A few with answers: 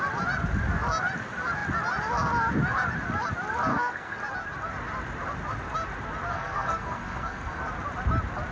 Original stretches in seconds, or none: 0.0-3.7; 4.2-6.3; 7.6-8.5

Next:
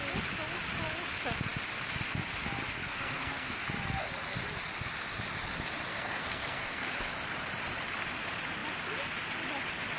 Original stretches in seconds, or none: 0.0-2.8; 3.6-5.9; 7.0-10.0